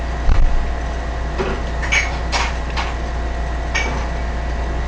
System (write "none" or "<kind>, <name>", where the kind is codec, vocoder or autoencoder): none